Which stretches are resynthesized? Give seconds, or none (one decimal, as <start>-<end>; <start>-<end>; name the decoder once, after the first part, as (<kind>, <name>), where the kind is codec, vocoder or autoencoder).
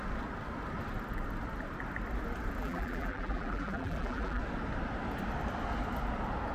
2.6-4.4 (vocoder, BigVGAN v2)